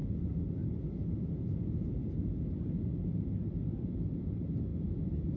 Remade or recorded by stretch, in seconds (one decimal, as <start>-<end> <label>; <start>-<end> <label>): 0.0-5.4 recorded